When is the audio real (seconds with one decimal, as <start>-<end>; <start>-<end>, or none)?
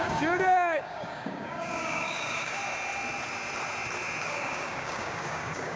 2.6-4.2